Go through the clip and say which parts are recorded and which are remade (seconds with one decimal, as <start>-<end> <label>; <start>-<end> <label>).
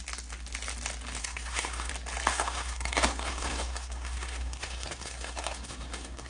0.0-1.2 recorded; 1.2-1.9 remade; 1.9-2.3 recorded; 2.3-6.3 remade